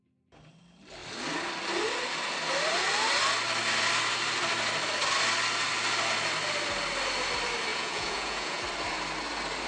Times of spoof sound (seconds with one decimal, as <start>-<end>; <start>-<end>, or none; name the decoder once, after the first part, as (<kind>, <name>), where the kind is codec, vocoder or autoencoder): 7.7-8.6 (vocoder, Vocos)